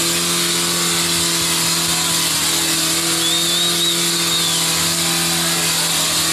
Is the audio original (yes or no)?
yes